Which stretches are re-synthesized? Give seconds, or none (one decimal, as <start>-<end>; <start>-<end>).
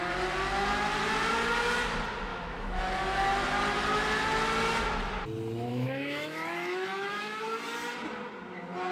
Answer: 2.3-2.8; 5.7-7.4